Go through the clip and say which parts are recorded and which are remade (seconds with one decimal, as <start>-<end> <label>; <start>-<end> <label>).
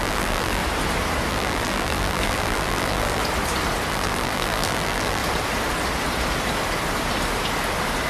0.0-0.6 remade; 0.6-1.3 recorded; 1.3-3.2 remade; 3.2-3.9 recorded; 3.9-5.2 remade; 5.2-8.1 recorded